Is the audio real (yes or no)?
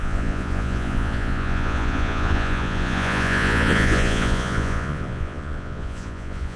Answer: no